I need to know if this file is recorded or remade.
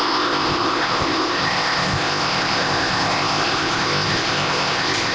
remade